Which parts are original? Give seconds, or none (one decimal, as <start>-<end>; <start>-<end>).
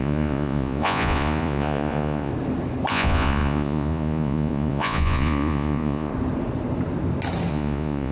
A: 2.3-2.9; 6.1-7.5